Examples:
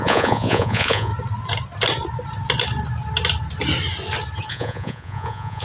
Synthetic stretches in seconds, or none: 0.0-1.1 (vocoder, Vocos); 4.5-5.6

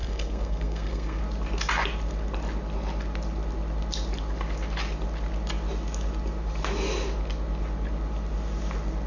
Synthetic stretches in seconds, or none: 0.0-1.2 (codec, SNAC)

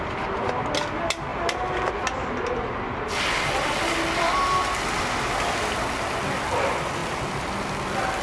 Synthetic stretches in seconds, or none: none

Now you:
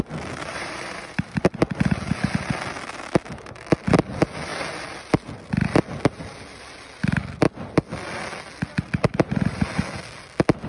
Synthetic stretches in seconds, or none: 0.5-1.5 (vocoder, BigVGAN v2)